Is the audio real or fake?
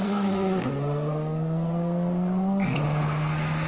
fake